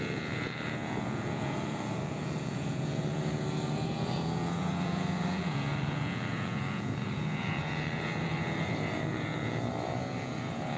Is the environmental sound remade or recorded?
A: remade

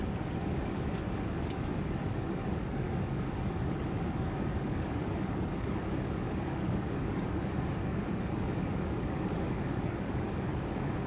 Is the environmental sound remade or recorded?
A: remade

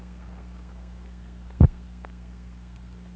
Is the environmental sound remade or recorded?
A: remade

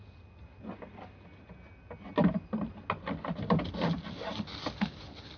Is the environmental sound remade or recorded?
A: recorded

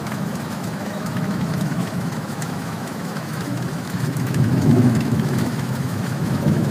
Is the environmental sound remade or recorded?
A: remade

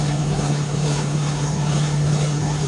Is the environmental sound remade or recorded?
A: remade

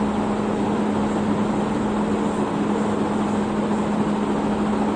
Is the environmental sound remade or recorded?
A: recorded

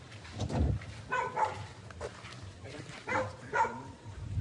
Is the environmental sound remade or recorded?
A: recorded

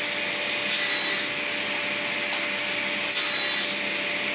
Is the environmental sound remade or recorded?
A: recorded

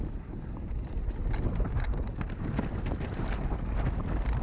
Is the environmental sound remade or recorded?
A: recorded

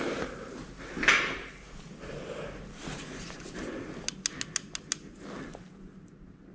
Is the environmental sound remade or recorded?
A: recorded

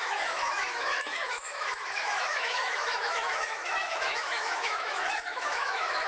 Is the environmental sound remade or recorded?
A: remade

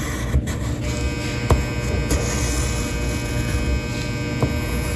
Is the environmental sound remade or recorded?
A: recorded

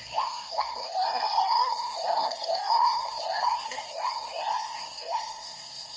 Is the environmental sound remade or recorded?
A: remade